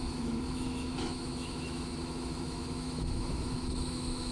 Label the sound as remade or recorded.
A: remade